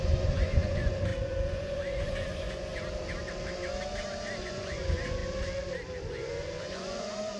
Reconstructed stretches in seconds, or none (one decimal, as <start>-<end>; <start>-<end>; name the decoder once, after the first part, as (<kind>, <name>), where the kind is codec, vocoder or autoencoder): 0.0-2.7 (vocoder, Vocos); 4.4-5.2; 6.1-7.4